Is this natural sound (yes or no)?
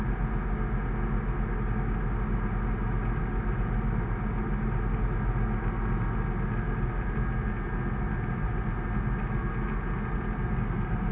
yes